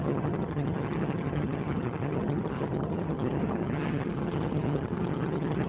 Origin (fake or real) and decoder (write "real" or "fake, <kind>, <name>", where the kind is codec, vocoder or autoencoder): fake, vocoder, HiFi-GAN